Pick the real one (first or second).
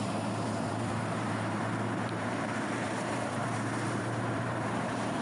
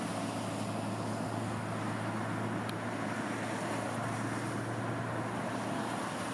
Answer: second